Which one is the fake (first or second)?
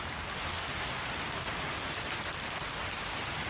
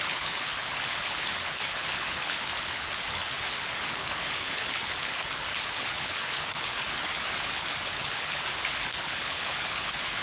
second